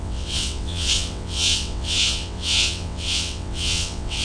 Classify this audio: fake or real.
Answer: fake